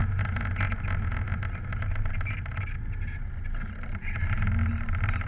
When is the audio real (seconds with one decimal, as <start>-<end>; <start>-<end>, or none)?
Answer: 0.0-5.3